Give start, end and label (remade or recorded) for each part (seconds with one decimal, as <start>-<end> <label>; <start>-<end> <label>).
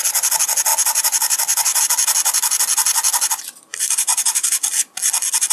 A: 0.0-3.7 recorded; 3.7-4.7 remade; 4.7-5.5 recorded